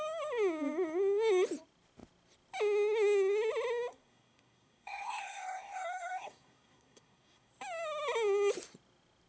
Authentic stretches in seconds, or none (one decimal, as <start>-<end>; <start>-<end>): 0.0-3.9; 7.5-9.3